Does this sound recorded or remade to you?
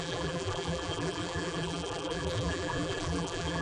remade